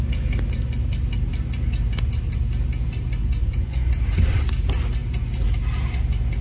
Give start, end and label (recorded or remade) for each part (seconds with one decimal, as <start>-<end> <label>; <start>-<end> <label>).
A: 0.0-3.4 recorded; 3.4-3.9 remade; 3.9-6.4 recorded